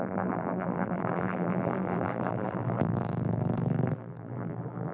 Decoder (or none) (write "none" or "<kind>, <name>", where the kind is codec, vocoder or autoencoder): vocoder, BigVGAN v2